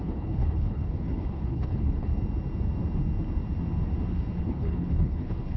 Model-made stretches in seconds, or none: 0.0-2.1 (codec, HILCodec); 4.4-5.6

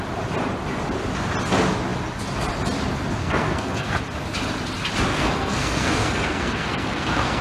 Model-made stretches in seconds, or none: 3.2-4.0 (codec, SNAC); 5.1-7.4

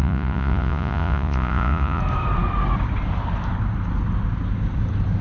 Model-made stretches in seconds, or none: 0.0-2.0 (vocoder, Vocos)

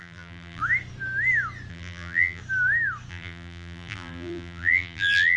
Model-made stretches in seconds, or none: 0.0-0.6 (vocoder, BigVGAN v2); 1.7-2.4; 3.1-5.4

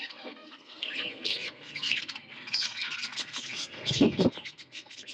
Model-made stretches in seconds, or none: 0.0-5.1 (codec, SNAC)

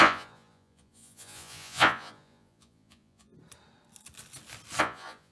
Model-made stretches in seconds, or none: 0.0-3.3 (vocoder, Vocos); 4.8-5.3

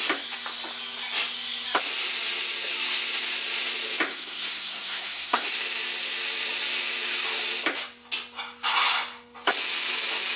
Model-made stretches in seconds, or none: 4.1-5.5 (codec, SNAC)

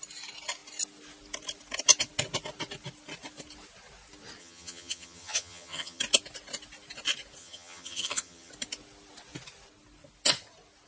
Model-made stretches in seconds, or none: 4.4-6.0 (vocoder, HiFi-GAN); 7.4-8.5